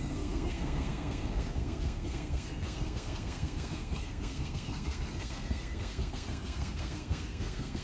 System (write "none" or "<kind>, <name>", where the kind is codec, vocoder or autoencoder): codec, SNAC